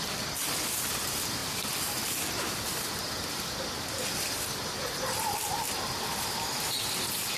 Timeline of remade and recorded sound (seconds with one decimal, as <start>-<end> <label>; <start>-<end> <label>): 0.0-7.4 recorded